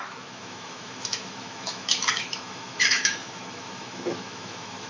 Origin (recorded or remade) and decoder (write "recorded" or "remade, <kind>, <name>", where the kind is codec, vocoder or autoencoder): remade, autoencoder, DAC-VAE